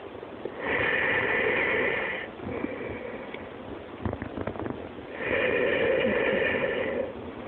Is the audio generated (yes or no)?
no